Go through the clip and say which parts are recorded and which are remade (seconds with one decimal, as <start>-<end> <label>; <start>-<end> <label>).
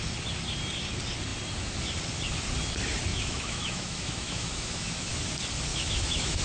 0.0-3.1 recorded; 3.1-5.1 remade; 5.1-5.7 recorded; 5.7-6.4 remade